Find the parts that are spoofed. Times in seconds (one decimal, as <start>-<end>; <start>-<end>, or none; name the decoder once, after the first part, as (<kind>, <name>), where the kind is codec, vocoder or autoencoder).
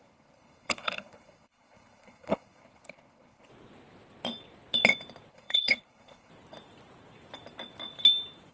0.0-3.5 (codec, HILCodec); 5.3-6.3